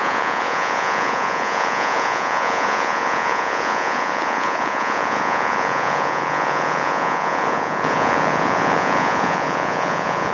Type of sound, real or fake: fake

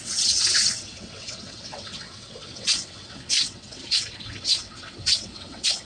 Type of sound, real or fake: fake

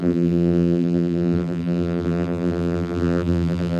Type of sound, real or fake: fake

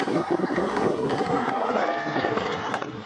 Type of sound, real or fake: fake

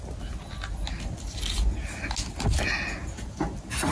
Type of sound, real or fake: real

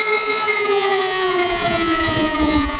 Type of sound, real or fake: fake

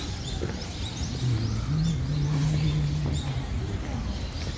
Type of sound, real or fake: real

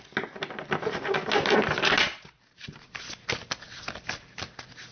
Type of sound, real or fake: real